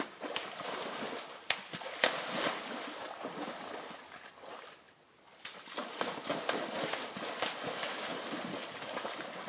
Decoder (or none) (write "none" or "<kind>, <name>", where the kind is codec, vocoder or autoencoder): none